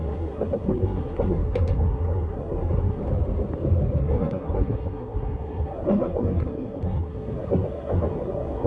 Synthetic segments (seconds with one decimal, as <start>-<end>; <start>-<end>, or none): 0.0-3.0; 4.0-8.7